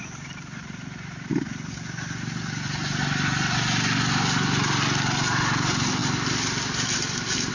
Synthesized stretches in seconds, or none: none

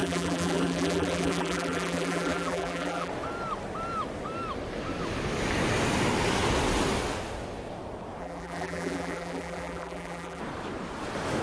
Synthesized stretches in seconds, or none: 0.0-3.1 (vocoder, BigVGAN v2); 8.2-10.4

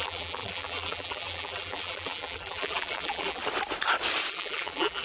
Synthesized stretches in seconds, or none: 0.0-3.4 (vocoder, BigVGAN v2); 4.3-5.0

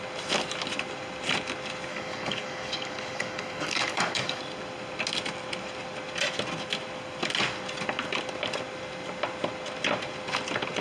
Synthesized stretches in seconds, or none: 1.9-4.4 (codec, DAC)

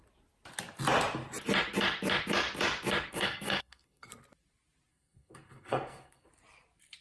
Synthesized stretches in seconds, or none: 3.1-4.1 (codec, SNAC); 4.9-6.3

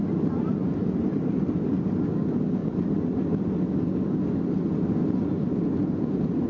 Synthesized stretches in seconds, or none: none